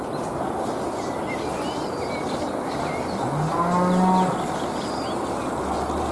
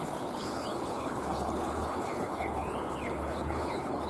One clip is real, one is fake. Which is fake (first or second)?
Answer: second